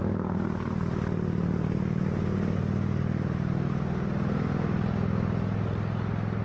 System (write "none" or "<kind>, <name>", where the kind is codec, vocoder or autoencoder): none